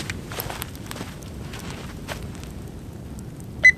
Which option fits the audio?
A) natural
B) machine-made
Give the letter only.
A